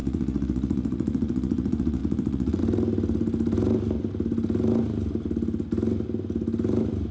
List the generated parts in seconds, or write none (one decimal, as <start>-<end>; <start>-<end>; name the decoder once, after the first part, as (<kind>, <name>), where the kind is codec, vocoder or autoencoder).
0.0-2.6 (vocoder, Vocos)